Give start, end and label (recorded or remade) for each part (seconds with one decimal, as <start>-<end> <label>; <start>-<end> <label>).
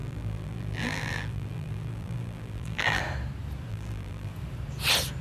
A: 0.0-3.0 remade; 3.0-3.7 recorded; 3.7-4.3 remade; 4.3-5.2 recorded